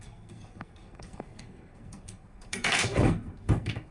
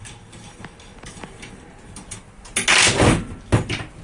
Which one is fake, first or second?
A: first